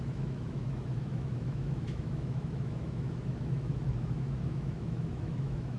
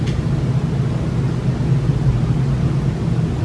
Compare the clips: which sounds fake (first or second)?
first